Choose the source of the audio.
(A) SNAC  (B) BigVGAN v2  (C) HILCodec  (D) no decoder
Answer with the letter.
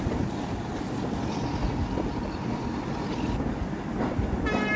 D